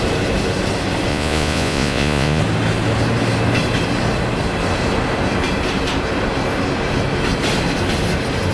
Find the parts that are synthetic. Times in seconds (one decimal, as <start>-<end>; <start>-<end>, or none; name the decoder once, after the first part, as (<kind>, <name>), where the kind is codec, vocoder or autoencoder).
1.1-2.4 (vocoder, Vocos)